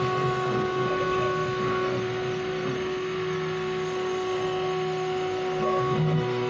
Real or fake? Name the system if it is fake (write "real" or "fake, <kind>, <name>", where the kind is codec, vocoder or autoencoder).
fake, codec, SNAC